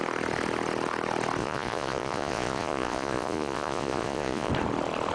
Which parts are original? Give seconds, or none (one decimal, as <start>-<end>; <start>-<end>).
0.0-1.4; 4.5-5.1